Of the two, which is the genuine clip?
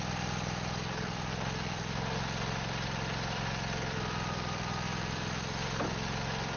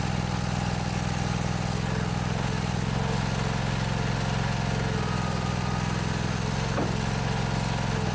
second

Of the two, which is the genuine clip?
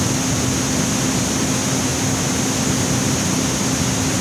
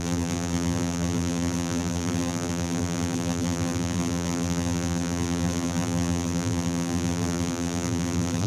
first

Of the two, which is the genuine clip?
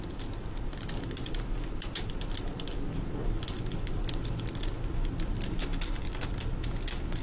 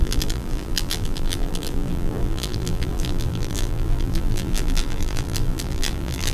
first